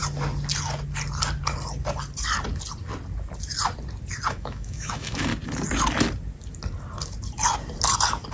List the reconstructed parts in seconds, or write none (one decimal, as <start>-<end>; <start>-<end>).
4.3-5.3